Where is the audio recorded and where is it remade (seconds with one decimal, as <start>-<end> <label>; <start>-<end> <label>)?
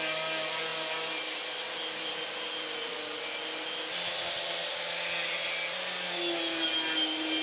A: 0.0-7.4 recorded